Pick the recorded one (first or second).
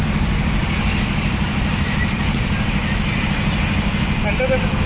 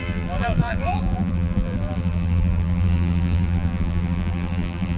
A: first